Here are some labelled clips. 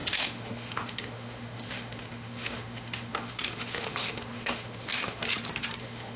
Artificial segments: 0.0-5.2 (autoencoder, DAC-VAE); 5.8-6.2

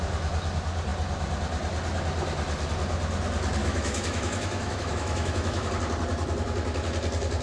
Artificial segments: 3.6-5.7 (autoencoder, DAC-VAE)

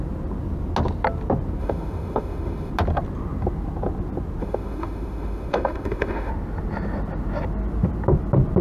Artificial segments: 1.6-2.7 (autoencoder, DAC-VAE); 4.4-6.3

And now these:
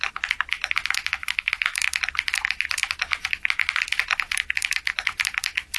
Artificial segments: 1.2-1.8 (autoencoder, DAC-VAE)